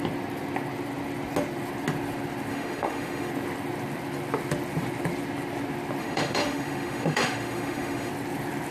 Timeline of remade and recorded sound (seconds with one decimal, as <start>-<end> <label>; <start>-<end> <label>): 0.0-2.5 recorded; 2.5-3.3 remade; 3.3-6.0 recorded; 6.0-8.1 remade; 8.1-8.7 recorded